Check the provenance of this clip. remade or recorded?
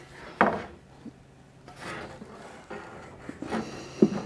recorded